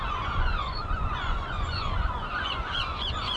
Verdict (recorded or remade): remade